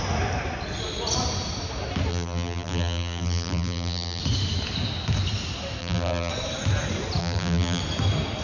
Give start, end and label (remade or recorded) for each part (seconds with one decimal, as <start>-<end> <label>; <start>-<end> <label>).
0.0-2.1 recorded; 2.1-4.2 remade; 4.2-5.8 recorded; 5.8-6.3 remade; 6.3-7.2 recorded; 7.2-7.8 remade; 7.8-8.4 recorded